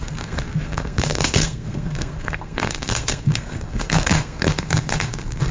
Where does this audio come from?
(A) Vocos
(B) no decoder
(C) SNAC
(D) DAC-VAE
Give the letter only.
C